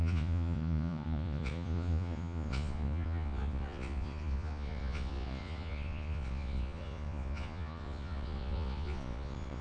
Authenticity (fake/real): fake